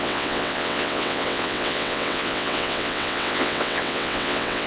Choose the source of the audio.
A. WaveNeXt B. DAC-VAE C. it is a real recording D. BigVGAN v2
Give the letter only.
A